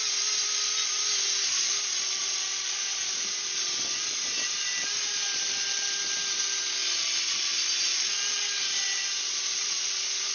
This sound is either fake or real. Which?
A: real